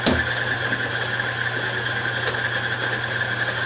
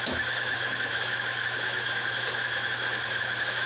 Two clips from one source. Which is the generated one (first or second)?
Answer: second